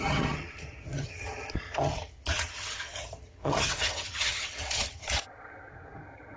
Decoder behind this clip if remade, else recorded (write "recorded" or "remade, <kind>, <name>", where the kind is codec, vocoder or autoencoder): remade, vocoder, HiFi-GAN